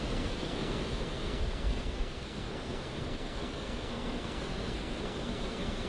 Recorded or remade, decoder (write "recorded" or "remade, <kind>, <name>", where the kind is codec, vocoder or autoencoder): remade, codec, SNAC